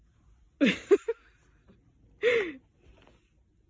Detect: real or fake real